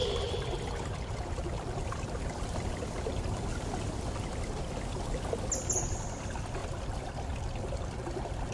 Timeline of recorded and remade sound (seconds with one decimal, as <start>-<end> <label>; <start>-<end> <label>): 0.0-4.2 remade; 4.2-6.6 recorded; 6.6-8.5 remade